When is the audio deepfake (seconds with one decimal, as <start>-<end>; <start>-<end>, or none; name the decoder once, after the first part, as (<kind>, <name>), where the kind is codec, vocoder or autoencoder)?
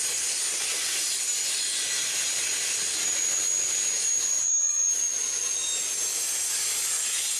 4.4-4.9 (autoencoder, DAC-VAE)